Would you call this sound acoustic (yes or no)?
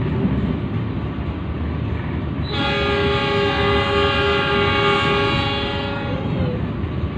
yes